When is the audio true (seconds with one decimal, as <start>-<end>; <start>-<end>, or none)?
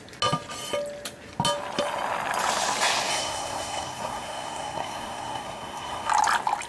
0.0-3.1; 6.1-6.7